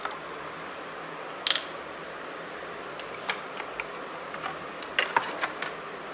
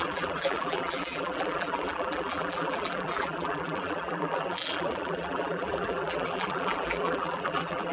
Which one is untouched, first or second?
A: first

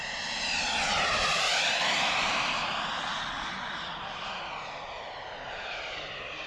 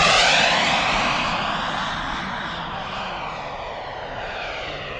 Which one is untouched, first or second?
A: second